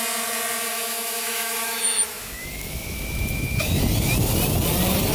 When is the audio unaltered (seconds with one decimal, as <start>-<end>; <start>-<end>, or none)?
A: 0.0-0.7; 3.8-5.1